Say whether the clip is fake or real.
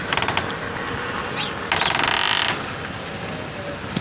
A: real